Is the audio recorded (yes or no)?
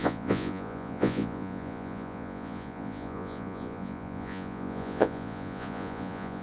no